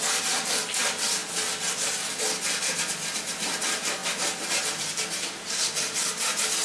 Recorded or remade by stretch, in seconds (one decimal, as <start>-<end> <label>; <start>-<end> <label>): 0.0-6.6 recorded